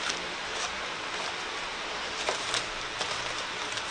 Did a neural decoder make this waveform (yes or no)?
yes